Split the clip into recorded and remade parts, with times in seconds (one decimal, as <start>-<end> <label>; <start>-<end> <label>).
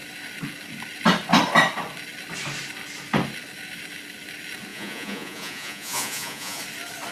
0.0-4.7 recorded; 4.7-6.6 remade; 6.6-7.1 recorded